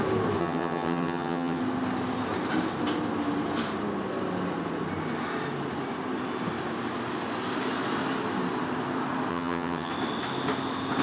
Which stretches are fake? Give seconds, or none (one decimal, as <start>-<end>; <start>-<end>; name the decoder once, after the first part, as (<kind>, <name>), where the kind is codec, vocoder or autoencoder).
0.4-1.6 (vocoder, HiFi-GAN); 9.3-9.9